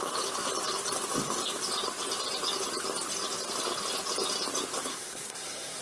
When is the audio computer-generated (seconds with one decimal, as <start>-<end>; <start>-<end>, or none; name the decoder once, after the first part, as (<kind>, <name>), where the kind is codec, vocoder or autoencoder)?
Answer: 4.9-5.8 (codec, SNAC)